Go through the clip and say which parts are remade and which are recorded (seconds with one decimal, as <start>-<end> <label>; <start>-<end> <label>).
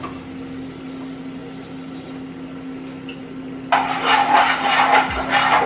0.0-5.7 recorded